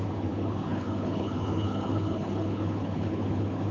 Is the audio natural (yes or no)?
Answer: no